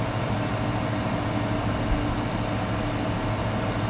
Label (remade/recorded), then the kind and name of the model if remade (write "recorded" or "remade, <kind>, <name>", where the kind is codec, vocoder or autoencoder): recorded